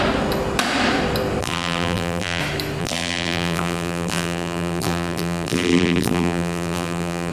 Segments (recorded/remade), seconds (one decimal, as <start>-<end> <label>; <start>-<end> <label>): 0.0-1.4 recorded; 1.4-2.4 remade; 2.4-2.8 recorded; 2.8-7.3 remade

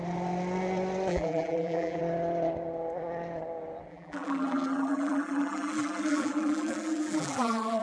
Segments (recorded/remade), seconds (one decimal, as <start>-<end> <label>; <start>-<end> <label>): 0.0-1.1 recorded; 1.1-2.0 remade; 2.0-3.9 recorded; 3.9-7.8 remade

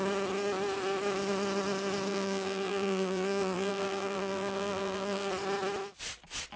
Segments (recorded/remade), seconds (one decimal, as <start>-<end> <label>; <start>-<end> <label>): 0.0-2.1 recorded; 2.1-5.3 remade; 5.3-6.6 recorded

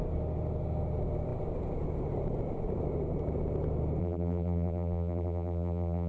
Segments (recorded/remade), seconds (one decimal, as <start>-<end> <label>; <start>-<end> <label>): 0.0-4.0 recorded; 4.0-6.1 remade

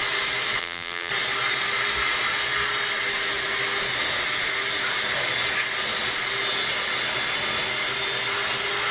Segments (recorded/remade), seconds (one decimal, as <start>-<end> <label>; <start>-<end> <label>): 0.0-0.6 recorded; 0.6-1.1 remade; 1.1-8.9 recorded

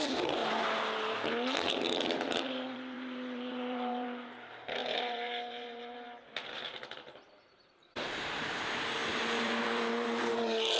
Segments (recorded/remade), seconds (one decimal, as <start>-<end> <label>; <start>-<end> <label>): 0.0-0.4 remade; 0.4-1.7 recorded; 1.7-10.8 remade